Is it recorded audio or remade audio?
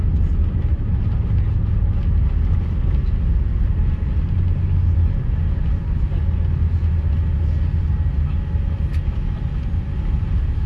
recorded